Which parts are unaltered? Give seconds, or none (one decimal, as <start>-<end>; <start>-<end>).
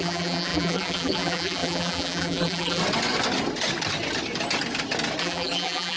2.8-5.2